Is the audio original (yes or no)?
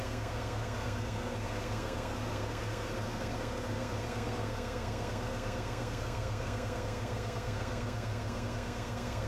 no